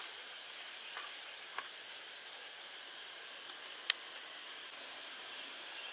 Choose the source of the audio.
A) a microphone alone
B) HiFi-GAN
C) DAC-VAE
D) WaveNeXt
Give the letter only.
A